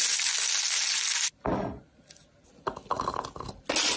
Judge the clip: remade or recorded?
recorded